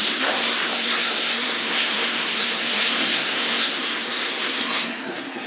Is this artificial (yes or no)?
yes